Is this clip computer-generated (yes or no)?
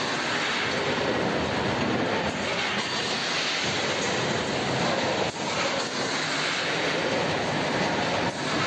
no